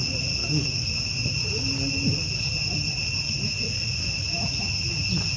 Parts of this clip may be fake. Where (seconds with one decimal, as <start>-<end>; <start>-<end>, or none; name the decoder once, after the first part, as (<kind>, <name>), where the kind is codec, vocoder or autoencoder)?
0.4-0.9 (autoencoder, DAC-VAE)